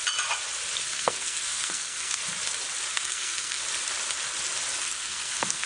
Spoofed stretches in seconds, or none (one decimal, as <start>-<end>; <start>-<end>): 0.8-2.2; 2.9-3.6; 4.8-5.7